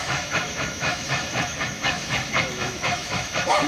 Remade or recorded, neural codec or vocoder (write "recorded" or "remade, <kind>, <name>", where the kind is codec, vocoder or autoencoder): remade, autoencoder, DAC-VAE